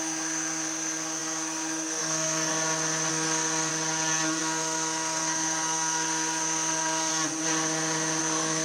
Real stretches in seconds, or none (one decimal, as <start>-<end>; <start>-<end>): 2.5-3.1; 3.7-4.4; 7.1-8.2